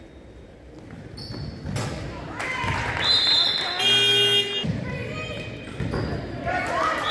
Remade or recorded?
recorded